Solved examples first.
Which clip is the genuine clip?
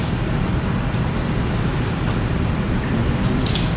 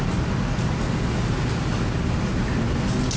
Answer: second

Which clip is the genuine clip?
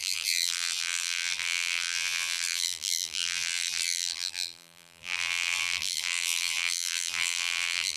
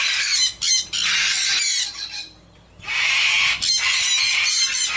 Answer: second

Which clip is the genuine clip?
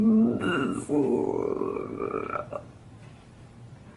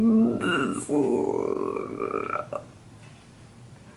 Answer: second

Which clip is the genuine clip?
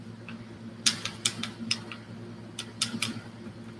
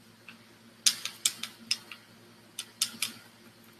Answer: second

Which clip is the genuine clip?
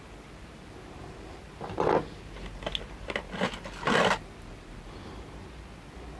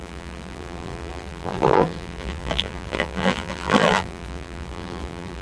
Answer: first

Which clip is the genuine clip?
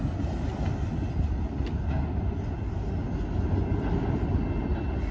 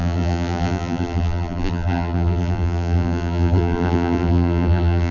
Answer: first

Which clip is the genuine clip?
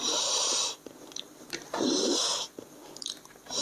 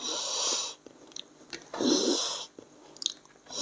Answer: second